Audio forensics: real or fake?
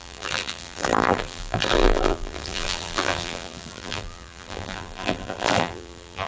fake